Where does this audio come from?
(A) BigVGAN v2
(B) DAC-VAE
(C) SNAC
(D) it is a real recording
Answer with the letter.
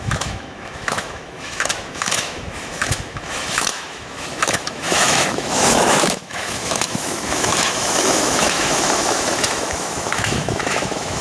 B